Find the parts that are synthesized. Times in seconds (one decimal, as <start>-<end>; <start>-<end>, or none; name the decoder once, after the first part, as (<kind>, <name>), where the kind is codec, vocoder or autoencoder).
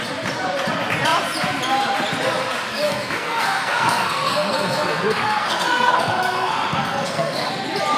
2.7-7.5 (codec, SNAC)